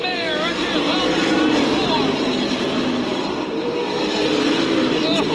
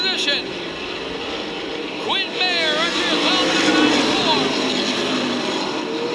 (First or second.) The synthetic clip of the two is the first